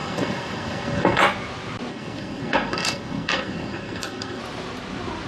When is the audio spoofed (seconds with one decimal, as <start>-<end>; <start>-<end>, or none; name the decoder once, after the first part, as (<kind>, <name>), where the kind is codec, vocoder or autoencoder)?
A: 0.0-1.2 (codec, SNAC); 1.9-4.4